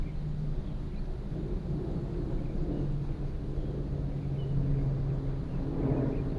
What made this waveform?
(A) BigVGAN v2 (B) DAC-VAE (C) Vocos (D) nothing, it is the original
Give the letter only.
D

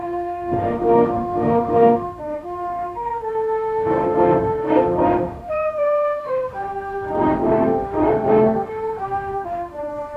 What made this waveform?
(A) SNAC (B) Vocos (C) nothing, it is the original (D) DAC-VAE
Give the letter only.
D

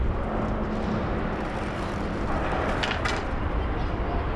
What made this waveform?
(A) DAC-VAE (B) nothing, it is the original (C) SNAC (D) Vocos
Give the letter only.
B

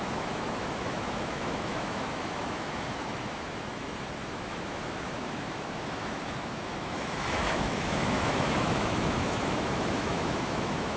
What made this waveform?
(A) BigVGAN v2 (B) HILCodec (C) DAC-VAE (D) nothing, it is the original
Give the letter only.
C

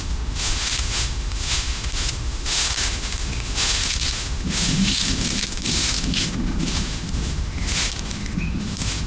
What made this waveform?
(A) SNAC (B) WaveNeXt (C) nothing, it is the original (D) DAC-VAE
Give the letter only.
D